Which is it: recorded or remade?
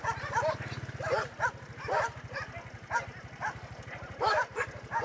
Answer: recorded